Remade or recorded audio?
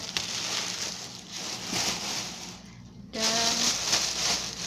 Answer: recorded